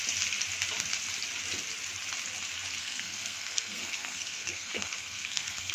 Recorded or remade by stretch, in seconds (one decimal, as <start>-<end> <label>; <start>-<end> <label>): 0.0-2.8 recorded; 2.8-5.7 remade